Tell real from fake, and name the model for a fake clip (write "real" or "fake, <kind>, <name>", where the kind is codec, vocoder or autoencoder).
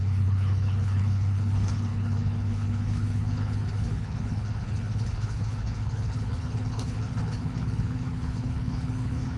fake, codec, HILCodec